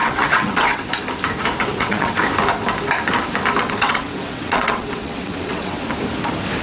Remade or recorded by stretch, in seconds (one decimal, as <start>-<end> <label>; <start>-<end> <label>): 0.0-0.9 remade; 0.9-1.6 recorded; 1.6-2.2 remade; 2.2-3.6 recorded; 3.6-5.8 remade; 5.8-6.6 recorded